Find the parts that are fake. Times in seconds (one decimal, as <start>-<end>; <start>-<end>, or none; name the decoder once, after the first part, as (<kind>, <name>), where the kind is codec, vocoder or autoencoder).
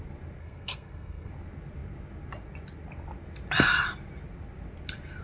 0.4-1.3 (codec, SNAC)